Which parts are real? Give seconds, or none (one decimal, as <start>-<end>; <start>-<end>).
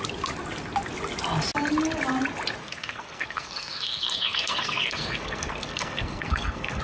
0.0-2.6